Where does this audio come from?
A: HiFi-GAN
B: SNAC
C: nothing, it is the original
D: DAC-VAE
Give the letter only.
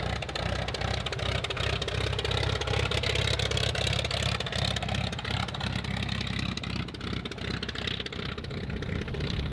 C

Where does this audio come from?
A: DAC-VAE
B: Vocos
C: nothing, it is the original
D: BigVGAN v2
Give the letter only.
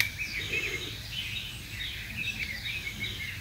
C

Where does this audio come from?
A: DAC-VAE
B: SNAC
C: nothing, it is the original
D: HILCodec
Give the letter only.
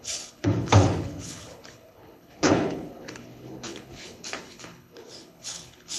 D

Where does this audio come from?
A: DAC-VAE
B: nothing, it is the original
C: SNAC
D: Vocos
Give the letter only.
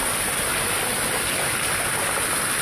B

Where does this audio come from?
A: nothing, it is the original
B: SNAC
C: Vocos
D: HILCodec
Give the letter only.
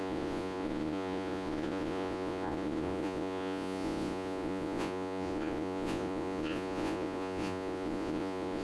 C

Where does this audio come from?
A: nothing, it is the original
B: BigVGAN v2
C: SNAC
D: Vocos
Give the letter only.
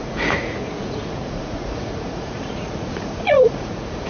D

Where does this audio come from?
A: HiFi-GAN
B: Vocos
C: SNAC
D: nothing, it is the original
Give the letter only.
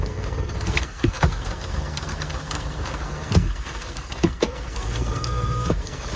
C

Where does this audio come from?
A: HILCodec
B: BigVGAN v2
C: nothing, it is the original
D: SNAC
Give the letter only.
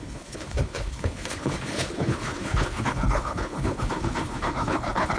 A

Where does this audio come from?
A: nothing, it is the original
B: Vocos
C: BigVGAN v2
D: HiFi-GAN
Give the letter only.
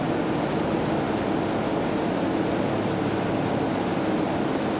A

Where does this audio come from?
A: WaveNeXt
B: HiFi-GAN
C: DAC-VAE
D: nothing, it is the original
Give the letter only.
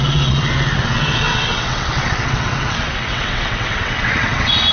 A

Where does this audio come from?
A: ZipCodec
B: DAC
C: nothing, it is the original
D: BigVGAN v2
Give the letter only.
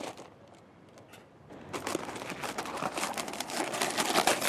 C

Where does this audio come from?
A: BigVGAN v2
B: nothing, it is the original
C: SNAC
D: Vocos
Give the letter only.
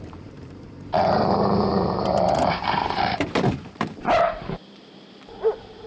A